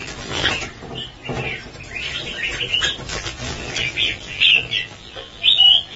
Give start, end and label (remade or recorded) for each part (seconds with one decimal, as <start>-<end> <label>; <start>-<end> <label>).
0.0-0.5 remade; 0.5-3.1 recorded; 3.1-6.0 remade